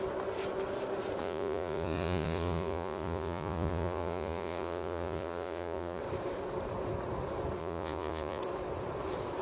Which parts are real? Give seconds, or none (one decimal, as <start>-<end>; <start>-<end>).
0.0-1.2; 6.0-7.6; 8.4-9.4